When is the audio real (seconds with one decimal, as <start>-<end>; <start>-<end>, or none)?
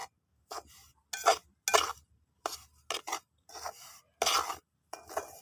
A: 0.0-5.4